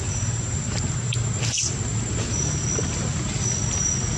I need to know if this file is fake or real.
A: real